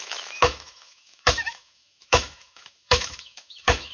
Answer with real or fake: fake